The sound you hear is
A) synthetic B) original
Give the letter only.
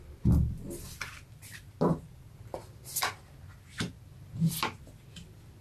B